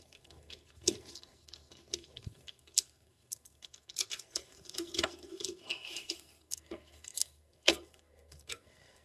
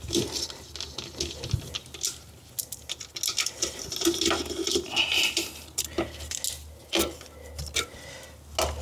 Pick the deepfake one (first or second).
first